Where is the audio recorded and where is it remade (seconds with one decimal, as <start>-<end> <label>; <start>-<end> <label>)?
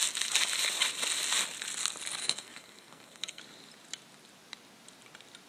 0.0-2.2 recorded; 2.2-3.4 remade; 3.4-5.5 recorded